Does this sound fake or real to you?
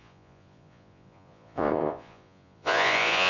fake